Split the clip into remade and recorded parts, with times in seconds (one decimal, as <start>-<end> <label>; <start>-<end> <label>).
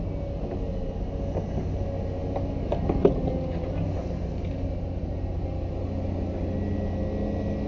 0.0-7.7 recorded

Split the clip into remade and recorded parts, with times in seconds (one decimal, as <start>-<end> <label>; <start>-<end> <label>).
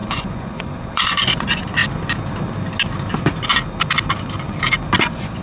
0.0-1.8 remade; 1.8-5.0 recorded; 5.0-5.4 remade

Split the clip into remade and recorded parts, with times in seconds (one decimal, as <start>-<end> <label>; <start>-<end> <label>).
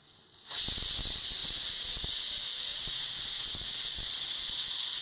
0.0-1.4 recorded; 1.4-2.0 remade; 2.0-2.7 recorded; 2.7-4.0 remade; 4.0-5.0 recorded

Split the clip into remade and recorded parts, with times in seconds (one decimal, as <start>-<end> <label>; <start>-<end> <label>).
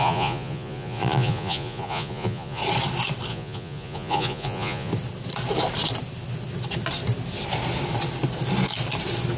0.0-2.6 remade; 2.6-3.3 recorded; 3.3-4.9 remade; 4.9-9.4 recorded